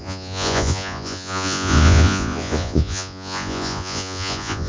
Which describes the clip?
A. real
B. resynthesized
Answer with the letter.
B